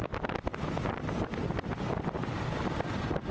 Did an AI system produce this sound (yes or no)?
no